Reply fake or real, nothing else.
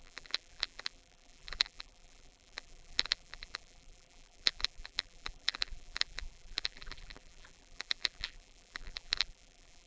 fake